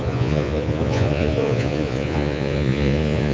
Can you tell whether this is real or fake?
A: fake